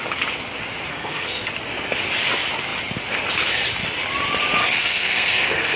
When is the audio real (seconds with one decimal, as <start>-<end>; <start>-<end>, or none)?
0.0-0.9; 1.5-4.6